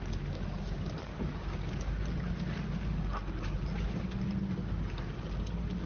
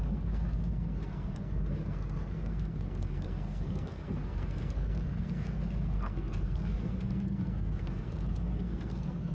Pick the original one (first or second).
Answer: first